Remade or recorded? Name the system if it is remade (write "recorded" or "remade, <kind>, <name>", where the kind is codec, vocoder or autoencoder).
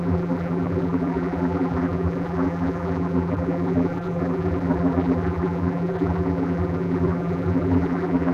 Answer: remade, vocoder, BigVGAN v2